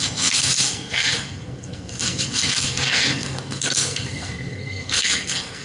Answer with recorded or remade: remade